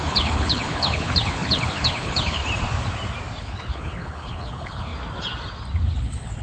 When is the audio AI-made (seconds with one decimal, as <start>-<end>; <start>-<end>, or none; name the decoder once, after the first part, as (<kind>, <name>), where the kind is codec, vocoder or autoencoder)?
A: 0.0-2.4 (codec, HILCodec); 3.4-4.9; 6.0-6.4